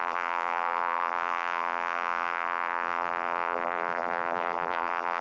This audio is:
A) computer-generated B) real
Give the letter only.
A